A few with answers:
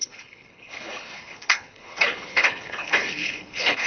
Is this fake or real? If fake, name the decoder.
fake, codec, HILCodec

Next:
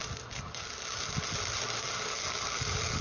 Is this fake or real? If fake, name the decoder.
real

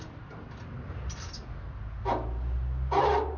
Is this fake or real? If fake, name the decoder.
real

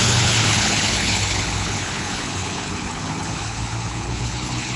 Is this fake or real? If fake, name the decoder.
fake, codec, HILCodec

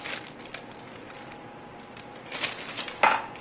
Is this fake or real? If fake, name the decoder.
real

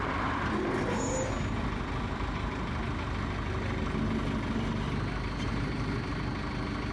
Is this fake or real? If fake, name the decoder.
real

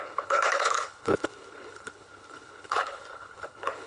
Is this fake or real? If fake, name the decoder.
fake, codec, HILCodec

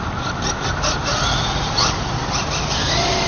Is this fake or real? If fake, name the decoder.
real